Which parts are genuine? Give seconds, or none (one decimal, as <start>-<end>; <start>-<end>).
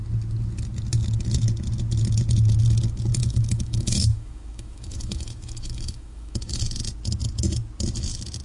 0.0-3.1; 6.6-8.4